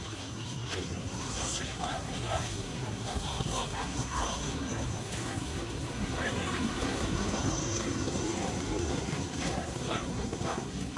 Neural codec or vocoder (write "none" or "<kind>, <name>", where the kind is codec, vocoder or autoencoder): codec, SNAC